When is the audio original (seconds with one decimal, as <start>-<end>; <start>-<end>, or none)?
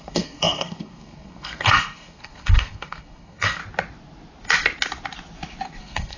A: 3.6-5.8